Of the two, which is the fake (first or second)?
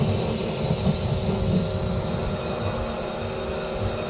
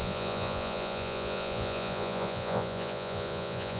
second